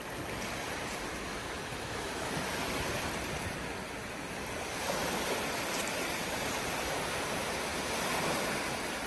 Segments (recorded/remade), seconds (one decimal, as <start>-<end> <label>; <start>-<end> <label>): 0.0-1.3 recorded; 1.3-2.3 remade; 2.3-9.1 recorded